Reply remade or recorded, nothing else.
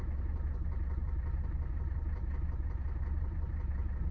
remade